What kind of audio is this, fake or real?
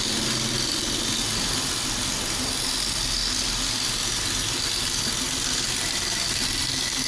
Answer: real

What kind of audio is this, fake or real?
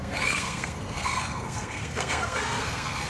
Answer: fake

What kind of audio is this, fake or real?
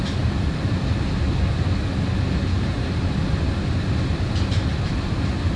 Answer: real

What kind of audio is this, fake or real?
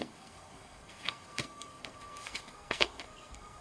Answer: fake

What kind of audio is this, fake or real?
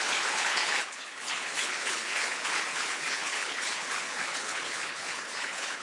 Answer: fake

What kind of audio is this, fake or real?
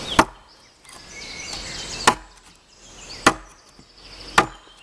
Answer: real